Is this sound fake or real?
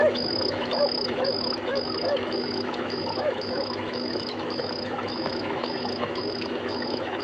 fake